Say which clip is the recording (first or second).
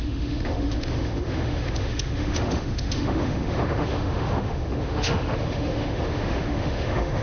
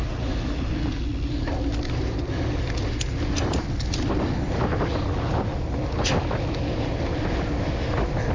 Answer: second